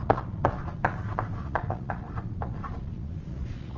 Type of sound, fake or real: fake